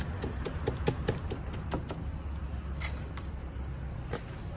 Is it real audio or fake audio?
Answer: real